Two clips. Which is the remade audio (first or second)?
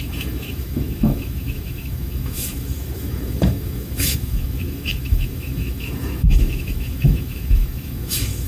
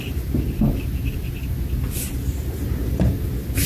first